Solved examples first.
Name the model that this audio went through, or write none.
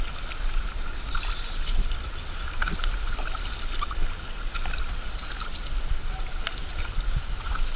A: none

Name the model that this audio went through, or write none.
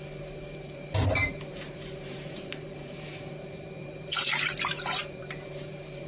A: vocoder, BigVGAN v2